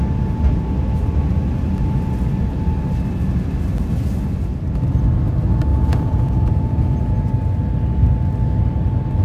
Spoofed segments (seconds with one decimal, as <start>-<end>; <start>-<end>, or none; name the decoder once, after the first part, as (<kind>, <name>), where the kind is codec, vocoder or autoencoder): 5.7-7.3 (vocoder, Vocos)